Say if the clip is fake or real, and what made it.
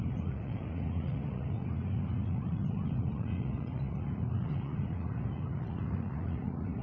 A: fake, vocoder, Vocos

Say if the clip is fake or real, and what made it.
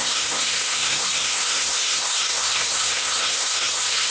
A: fake, codec, SNAC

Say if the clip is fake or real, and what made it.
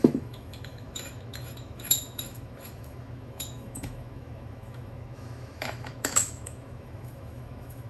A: fake, autoencoder, DAC-VAE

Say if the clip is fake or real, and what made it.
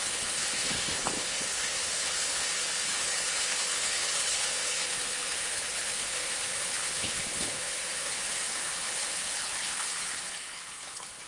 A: fake, codec, HILCodec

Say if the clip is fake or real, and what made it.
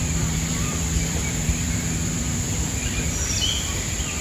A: fake, vocoder, BigVGAN v2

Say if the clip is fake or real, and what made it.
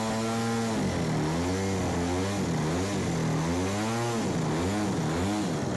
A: real